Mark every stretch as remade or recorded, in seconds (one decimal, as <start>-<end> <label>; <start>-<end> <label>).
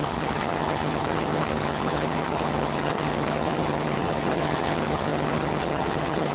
0.0-6.3 remade